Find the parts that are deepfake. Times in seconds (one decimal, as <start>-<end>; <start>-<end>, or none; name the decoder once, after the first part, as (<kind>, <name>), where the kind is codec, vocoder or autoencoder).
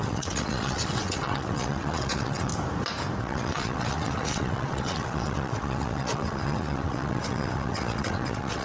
0.0-2.5 (vocoder, WaveNeXt); 3.2-8.6